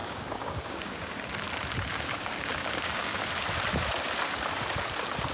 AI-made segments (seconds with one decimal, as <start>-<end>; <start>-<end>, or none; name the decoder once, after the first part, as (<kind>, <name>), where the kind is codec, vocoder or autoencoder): 0.0-1.1 (codec, DAC); 1.9-3.3